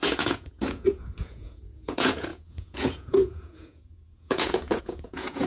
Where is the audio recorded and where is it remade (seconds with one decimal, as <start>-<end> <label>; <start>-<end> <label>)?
0.0-5.5 remade